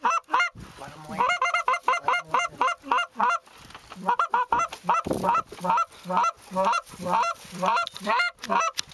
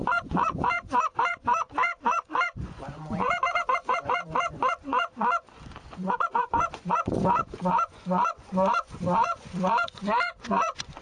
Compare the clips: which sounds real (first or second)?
first